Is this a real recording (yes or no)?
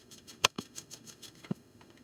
no